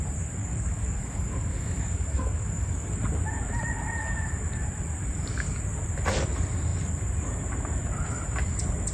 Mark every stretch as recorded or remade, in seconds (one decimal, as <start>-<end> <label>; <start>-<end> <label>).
0.0-0.4 recorded; 0.4-2.9 remade; 2.9-8.9 recorded